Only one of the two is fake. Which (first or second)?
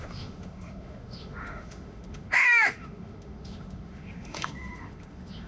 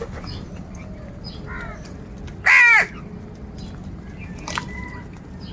first